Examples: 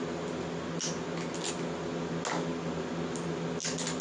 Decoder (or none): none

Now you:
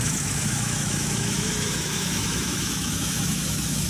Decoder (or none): autoencoder, DAC-VAE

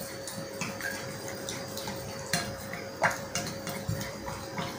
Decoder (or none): vocoder, BigVGAN v2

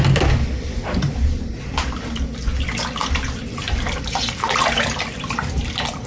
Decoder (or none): none